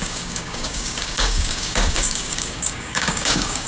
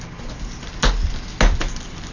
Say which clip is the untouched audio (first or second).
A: second